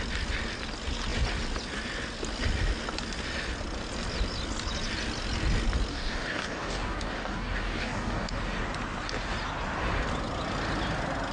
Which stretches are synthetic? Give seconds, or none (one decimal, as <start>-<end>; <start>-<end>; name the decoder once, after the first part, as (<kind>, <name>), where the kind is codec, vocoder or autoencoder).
5.9-8.3 (codec, DAC)